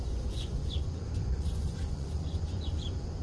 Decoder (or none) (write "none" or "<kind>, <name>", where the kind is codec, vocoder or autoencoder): vocoder, Vocos